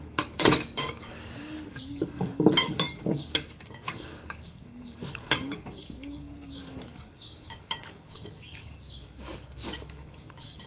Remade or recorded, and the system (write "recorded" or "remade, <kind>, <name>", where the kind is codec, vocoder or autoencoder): remade, codec, DAC